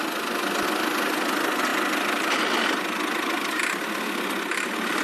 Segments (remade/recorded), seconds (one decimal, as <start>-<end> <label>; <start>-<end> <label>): 0.0-5.0 recorded